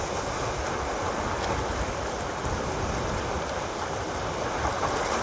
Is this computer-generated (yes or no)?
no